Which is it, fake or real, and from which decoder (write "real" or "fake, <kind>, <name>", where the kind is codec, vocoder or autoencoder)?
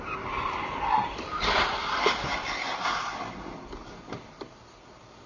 fake, vocoder, BigVGAN v2